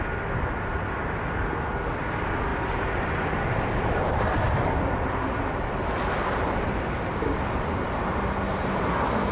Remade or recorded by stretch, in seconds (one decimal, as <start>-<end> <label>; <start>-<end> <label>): 0.0-2.5 recorded; 2.5-6.5 remade; 6.5-7.3 recorded; 7.3-8.0 remade; 8.0-9.3 recorded